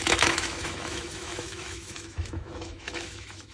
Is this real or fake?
fake